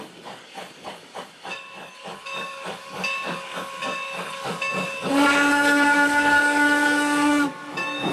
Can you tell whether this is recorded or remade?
remade